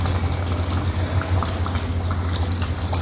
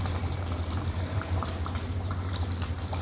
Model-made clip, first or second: second